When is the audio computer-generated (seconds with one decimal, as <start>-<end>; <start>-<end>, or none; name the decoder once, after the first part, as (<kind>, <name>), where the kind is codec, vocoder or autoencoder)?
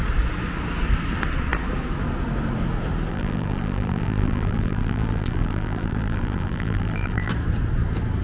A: 3.1-7.3 (vocoder, BigVGAN v2)